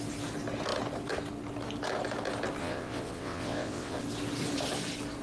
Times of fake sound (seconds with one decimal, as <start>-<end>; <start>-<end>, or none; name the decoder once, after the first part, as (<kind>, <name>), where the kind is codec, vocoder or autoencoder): 2.6-4.0 (vocoder, WaveNeXt)